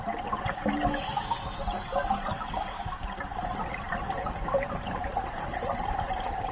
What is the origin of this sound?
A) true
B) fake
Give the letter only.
A